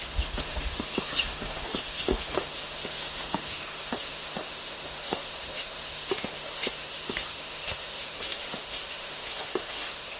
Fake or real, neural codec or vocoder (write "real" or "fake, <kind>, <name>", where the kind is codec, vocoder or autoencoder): fake, autoencoder, DAC-VAE